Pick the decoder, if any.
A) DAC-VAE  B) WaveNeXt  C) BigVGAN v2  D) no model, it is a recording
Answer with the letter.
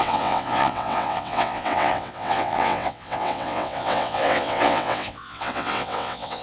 B